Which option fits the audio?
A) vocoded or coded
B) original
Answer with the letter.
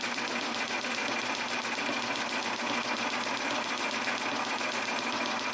B